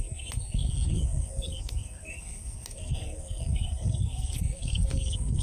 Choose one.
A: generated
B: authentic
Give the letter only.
A